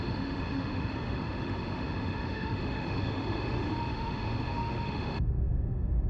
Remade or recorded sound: remade